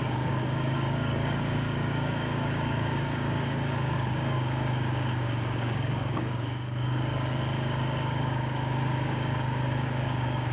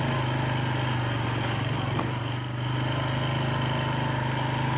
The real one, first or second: second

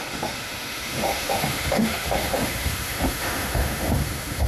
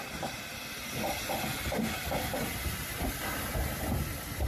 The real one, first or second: second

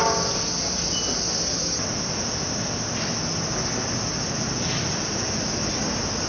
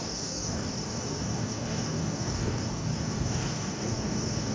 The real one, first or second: first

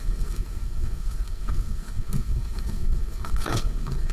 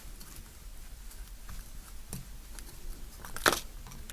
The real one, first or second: second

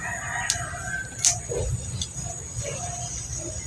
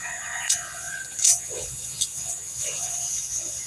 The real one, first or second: first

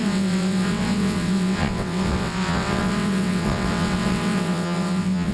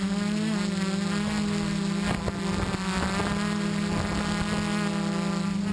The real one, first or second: second